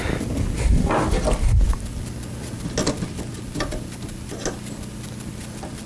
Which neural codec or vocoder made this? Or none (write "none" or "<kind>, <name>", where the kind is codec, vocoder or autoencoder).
none